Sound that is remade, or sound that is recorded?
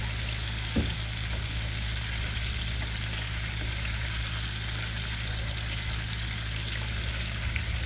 recorded